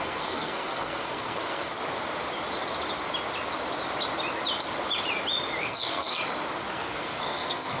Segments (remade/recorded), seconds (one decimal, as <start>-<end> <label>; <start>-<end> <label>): 0.0-1.7 remade; 1.7-5.6 recorded; 5.6-6.2 remade; 6.2-6.7 recorded; 6.7-7.8 remade